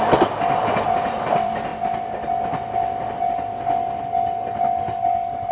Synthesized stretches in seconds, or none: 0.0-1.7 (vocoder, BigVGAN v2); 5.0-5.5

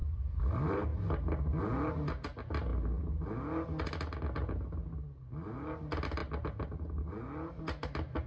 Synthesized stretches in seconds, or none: none

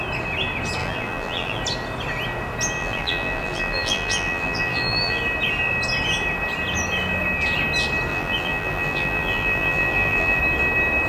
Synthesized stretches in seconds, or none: 0.8-1.6 (vocoder, BigVGAN v2); 2.8-5.2; 8.1-10.4

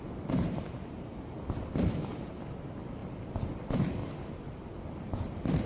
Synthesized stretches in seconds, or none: 0.0-3.0 (vocoder, BigVGAN v2); 3.6-4.0; 5.1-5.7

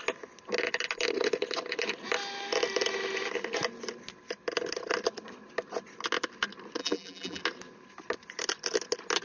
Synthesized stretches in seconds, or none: 6.8-7.4 (vocoder, BigVGAN v2)

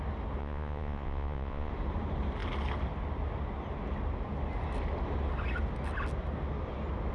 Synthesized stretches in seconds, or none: 0.4-1.7 (vocoder, Vocos)

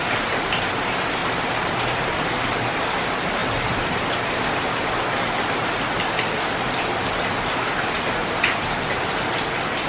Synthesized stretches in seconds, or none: 1.2-2.3 (vocoder, BigVGAN v2); 8.2-9.4